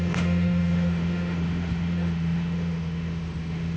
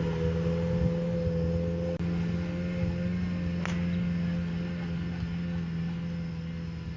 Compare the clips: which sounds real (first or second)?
second